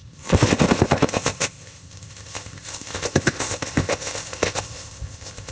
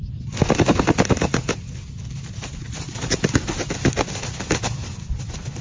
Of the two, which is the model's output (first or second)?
first